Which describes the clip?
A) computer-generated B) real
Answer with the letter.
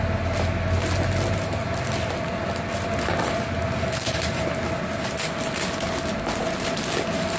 B